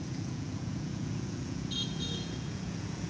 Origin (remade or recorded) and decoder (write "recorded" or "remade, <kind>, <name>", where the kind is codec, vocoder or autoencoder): remade, vocoder, Vocos